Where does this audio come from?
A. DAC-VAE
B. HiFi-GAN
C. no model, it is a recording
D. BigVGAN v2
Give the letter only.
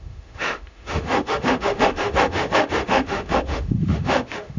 A